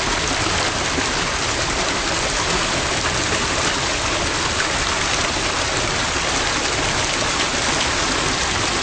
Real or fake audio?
real